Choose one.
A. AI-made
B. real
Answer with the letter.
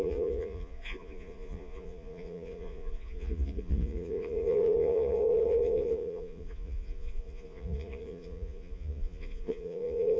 A